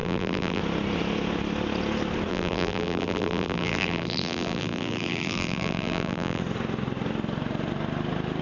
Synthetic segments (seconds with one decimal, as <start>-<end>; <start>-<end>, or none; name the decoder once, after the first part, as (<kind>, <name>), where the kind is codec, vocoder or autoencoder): 0.0-0.6 (vocoder, BigVGAN v2); 2.3-6.4